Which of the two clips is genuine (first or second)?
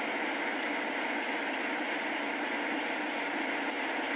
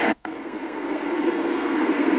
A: first